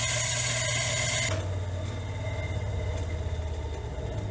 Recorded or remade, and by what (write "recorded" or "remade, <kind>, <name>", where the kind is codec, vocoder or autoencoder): recorded